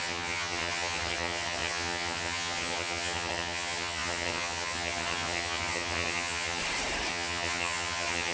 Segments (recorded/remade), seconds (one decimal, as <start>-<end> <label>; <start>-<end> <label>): 0.0-6.6 remade; 6.6-7.1 recorded; 7.1-8.3 remade